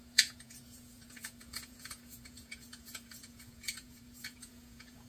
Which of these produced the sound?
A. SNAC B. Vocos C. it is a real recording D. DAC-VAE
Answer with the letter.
B